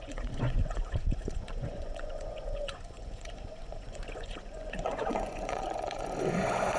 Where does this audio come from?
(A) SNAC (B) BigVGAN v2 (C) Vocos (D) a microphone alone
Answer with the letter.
C